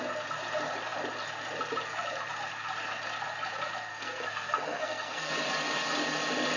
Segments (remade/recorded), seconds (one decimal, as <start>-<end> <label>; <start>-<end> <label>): 0.0-3.9 recorded; 3.9-5.3 remade; 5.3-6.6 recorded